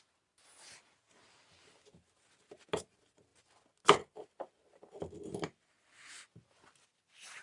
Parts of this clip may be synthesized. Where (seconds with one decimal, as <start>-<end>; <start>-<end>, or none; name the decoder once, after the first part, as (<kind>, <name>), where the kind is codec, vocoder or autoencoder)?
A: none